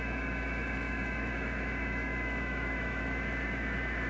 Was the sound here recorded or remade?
remade